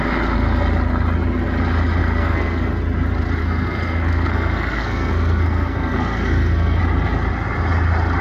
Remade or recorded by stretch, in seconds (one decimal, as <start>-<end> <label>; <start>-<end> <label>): 0.0-2.0 recorded; 2.0-2.7 remade; 2.7-3.4 recorded; 3.4-6.8 remade; 6.8-8.2 recorded